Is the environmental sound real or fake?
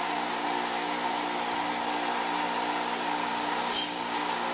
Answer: real